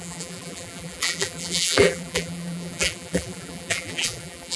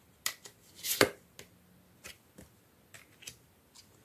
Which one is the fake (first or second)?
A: first